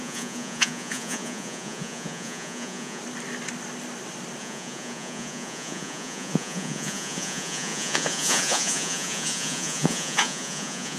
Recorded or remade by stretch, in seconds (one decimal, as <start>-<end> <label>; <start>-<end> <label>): 0.0-3.0 remade; 3.0-4.4 recorded; 4.4-11.0 remade